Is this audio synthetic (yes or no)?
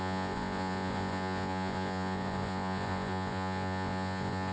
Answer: yes